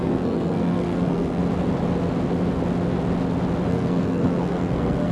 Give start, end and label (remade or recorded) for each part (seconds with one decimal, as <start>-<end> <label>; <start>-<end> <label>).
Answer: 0.0-1.4 remade; 1.4-3.7 recorded; 3.7-5.1 remade